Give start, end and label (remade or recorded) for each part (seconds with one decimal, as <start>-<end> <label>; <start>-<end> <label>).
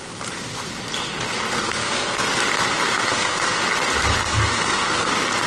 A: 0.0-1.6 recorded; 1.6-2.3 remade; 2.3-3.1 recorded; 3.1-3.6 remade; 3.6-4.2 recorded; 4.2-5.1 remade; 5.1-5.5 recorded